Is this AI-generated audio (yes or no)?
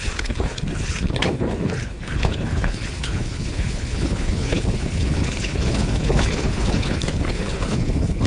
yes